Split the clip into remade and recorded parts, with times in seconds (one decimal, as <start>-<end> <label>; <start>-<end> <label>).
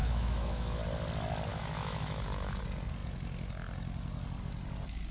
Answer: 0.0-0.8 remade; 0.8-1.5 recorded; 1.5-2.6 remade; 2.6-5.1 recorded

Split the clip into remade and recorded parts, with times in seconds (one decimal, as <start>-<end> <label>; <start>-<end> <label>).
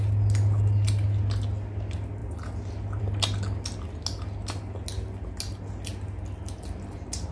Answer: 0.0-7.3 recorded